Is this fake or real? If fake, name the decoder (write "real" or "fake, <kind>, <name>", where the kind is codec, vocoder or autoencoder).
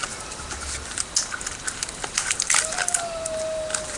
real